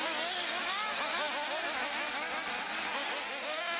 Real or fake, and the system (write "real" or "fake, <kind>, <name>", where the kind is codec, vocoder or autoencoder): real